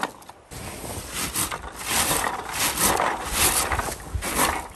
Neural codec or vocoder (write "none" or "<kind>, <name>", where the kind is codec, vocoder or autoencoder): none